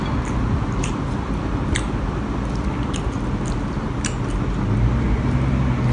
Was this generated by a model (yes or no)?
no